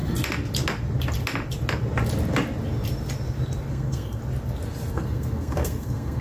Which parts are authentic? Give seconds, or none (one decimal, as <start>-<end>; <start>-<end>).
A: 0.0-3.7; 4.2-4.9